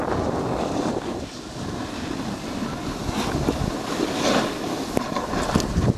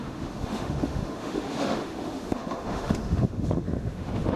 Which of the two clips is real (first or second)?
first